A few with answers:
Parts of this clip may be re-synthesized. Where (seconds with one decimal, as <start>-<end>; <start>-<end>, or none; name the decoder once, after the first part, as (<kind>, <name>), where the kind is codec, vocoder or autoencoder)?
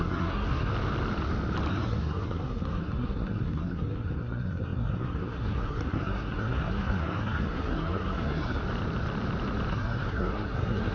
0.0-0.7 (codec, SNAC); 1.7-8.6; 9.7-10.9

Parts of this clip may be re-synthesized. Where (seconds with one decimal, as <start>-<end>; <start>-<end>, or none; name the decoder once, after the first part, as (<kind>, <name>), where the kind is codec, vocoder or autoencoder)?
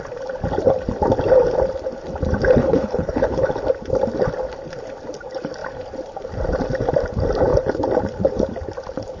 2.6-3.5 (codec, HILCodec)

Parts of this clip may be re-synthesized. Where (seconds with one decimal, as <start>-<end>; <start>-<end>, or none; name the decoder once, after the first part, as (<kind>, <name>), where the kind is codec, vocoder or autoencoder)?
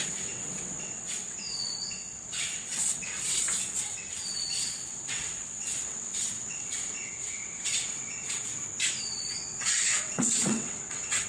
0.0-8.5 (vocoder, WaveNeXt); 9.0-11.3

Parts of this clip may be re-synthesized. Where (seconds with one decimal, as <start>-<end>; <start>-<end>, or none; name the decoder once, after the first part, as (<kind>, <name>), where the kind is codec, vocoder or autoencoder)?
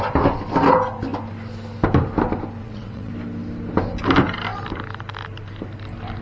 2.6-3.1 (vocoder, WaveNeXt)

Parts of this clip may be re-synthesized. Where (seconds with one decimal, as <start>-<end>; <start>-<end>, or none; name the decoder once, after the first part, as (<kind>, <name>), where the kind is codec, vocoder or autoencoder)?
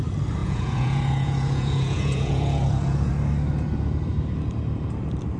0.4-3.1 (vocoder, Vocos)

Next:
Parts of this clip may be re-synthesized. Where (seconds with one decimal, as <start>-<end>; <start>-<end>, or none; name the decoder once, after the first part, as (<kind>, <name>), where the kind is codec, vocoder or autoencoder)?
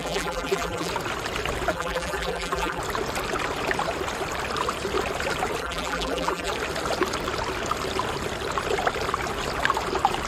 0.0-0.9 (vocoder, BigVGAN v2); 1.7-2.8; 5.6-6.5